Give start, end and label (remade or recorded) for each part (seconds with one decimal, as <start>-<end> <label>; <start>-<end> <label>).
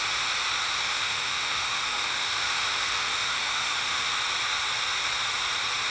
0.0-0.6 recorded; 0.6-4.1 remade; 4.1-5.9 recorded